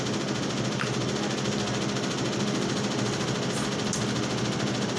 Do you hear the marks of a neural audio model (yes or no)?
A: no